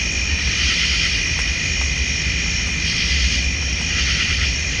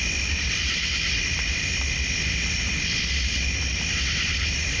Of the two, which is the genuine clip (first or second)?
first